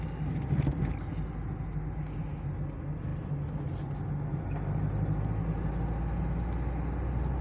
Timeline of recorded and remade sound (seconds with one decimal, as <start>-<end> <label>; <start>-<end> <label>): 0.0-7.4 recorded